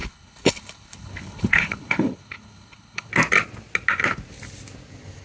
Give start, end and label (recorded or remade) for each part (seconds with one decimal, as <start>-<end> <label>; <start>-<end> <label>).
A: 0.0-3.1 remade; 3.1-5.2 recorded